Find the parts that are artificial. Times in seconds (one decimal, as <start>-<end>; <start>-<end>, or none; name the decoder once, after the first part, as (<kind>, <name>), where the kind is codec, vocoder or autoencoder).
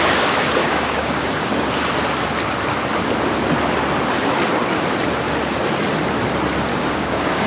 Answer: 0.6-1.5 (codec, DAC); 6.7-7.5